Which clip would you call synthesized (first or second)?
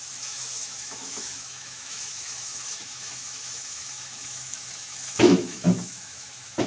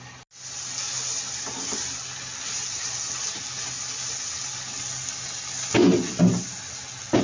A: first